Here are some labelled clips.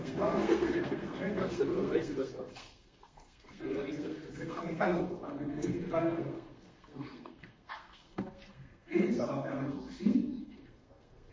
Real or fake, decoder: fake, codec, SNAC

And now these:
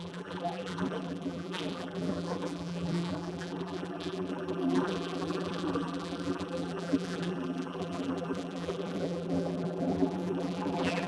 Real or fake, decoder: fake, vocoder, BigVGAN v2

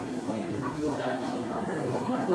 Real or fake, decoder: fake, codec, SNAC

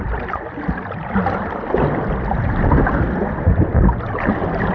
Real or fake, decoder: real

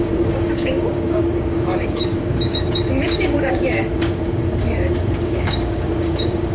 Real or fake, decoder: fake, codec, DAC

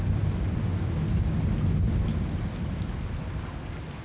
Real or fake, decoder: real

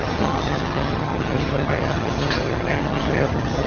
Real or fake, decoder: fake, vocoder, HiFi-GAN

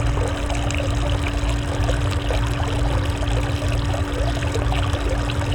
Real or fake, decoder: real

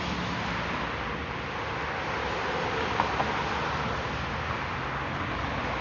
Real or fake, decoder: real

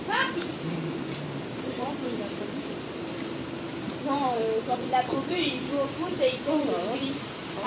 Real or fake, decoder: fake, vocoder, BigVGAN v2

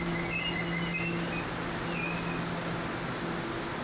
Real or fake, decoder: real